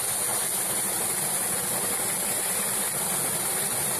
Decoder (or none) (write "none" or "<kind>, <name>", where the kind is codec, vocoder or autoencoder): none